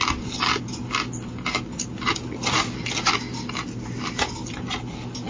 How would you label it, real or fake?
real